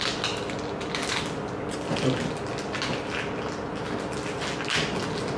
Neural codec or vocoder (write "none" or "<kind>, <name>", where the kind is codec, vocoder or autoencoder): none